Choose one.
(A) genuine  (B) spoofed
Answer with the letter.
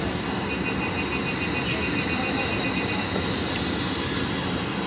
A